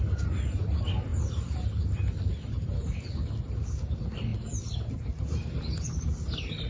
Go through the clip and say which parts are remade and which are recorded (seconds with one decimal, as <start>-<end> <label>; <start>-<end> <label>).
0.0-6.7 recorded